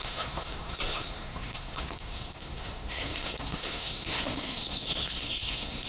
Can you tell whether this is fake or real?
fake